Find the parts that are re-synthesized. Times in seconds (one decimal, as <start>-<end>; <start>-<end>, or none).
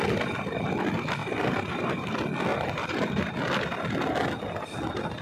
1.2-2.1; 2.5-3.3